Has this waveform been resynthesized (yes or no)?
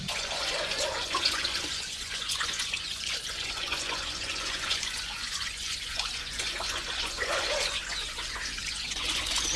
yes